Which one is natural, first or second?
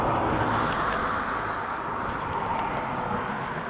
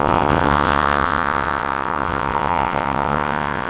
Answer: first